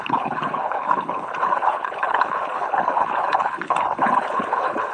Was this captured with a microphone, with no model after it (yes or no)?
no